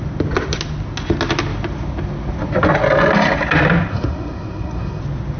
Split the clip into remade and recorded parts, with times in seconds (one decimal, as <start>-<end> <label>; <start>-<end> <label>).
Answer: 0.0-3.9 recorded; 3.9-5.0 remade; 5.0-5.4 recorded